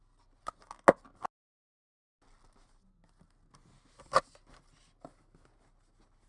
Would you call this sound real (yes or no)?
yes